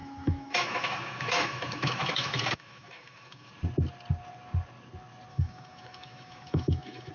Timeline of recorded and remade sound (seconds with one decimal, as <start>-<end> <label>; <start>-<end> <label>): 0.0-3.5 remade; 3.5-5.3 recorded; 5.3-7.1 remade